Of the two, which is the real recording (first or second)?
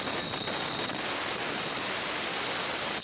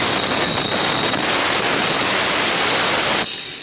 second